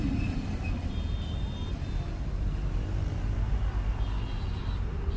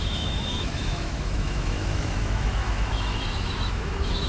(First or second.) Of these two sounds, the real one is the first